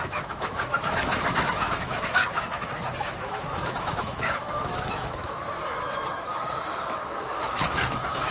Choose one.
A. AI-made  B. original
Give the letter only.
A